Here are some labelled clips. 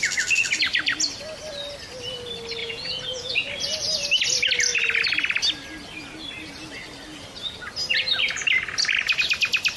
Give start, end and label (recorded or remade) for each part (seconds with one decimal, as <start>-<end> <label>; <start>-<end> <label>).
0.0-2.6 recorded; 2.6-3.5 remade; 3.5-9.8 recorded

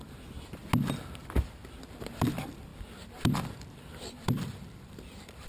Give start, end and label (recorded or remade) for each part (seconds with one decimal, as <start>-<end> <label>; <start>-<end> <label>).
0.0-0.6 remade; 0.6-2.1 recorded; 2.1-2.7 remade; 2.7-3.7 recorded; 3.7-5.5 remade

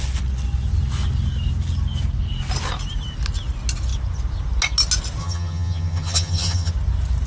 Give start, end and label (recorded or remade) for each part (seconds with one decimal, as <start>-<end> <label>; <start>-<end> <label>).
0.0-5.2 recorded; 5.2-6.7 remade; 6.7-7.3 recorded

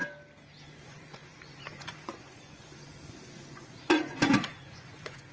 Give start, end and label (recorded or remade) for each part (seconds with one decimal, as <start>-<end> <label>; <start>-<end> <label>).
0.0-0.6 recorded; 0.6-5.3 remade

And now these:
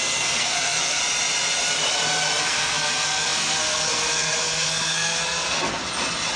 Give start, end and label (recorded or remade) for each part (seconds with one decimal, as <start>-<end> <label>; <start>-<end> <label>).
0.0-1.0 remade; 1.0-2.4 recorded; 2.4-5.8 remade; 5.8-6.4 recorded